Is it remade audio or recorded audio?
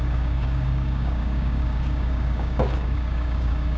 remade